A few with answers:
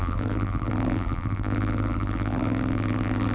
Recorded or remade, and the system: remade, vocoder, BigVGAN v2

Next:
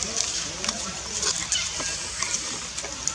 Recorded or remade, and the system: recorded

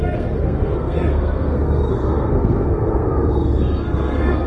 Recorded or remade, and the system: remade, codec, SNAC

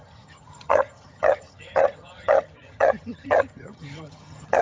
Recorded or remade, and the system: remade, vocoder, HiFi-GAN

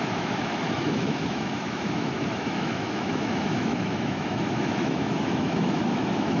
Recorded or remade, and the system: remade, autoencoder, DAC-VAE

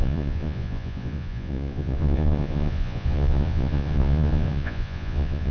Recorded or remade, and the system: remade, vocoder, Vocos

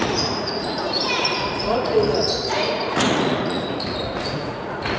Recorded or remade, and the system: remade, vocoder, Vocos